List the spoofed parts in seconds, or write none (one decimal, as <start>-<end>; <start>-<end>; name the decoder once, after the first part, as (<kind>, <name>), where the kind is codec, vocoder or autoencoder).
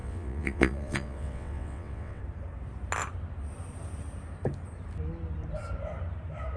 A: 0.0-2.2 (vocoder, WaveNeXt)